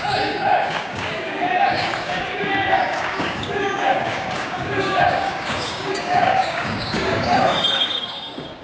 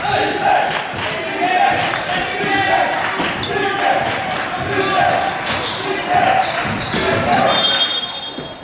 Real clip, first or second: second